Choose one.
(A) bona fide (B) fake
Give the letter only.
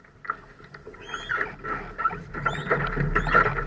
A